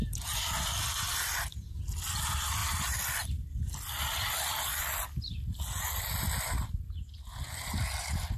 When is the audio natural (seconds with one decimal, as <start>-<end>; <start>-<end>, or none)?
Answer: 0.0-8.4